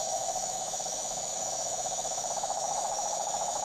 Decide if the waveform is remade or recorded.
remade